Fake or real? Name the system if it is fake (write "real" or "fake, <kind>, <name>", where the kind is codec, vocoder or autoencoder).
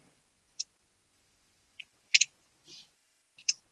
fake, vocoder, Vocos